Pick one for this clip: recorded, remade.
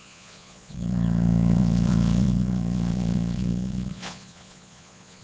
remade